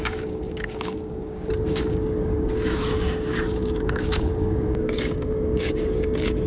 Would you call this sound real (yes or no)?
no